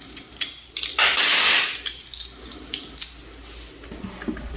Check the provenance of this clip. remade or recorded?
recorded